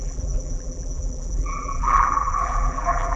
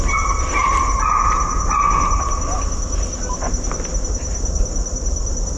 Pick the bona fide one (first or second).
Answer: second